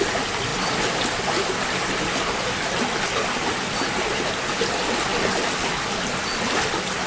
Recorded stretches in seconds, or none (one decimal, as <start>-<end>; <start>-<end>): 0.0-7.1